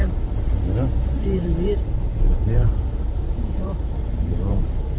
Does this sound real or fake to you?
fake